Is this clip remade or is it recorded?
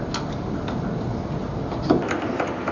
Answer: recorded